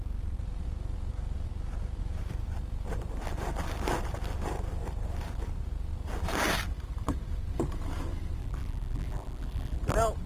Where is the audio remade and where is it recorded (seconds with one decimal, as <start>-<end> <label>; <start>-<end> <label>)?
0.0-8.4 recorded; 8.4-9.8 remade; 9.8-10.3 recorded